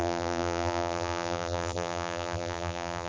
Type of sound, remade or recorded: remade